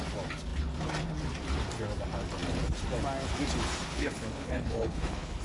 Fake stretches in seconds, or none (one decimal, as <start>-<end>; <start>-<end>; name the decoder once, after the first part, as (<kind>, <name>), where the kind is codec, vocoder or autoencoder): 3.9-5.4 (codec, HILCodec)